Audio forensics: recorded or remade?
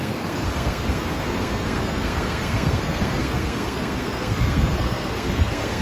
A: remade